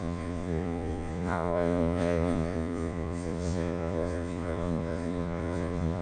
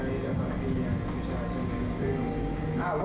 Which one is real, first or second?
second